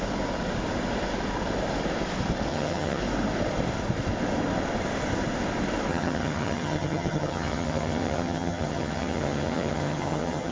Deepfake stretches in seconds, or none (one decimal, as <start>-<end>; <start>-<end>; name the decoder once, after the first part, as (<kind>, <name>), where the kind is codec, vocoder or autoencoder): 2.5-3.0 (vocoder, HiFi-GAN); 5.9-10.5